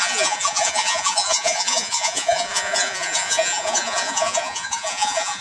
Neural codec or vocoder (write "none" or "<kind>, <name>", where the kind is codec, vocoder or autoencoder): vocoder, Vocos